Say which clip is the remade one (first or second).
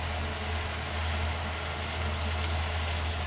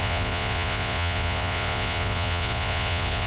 second